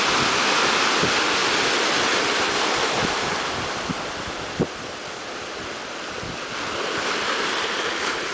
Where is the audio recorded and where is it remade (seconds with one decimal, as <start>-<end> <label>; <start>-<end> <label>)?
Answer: 0.0-8.3 recorded